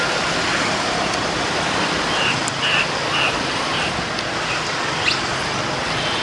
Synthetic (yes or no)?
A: no